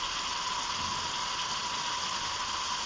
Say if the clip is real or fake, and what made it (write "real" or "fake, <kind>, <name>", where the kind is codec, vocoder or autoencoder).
real